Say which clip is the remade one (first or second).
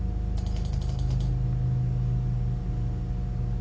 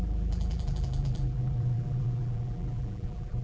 second